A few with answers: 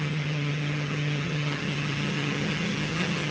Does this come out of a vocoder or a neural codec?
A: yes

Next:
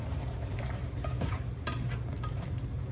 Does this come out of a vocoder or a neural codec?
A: yes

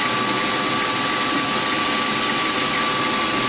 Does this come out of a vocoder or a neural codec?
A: no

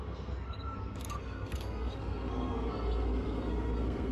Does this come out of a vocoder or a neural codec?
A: yes